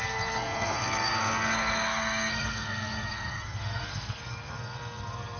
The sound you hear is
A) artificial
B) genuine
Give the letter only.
A